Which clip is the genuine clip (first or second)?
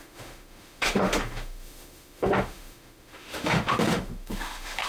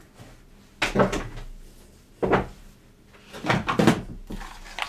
second